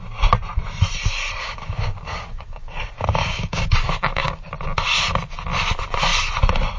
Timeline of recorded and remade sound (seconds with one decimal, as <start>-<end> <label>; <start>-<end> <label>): 0.0-1.4 recorded; 1.4-4.4 remade; 4.4-6.8 recorded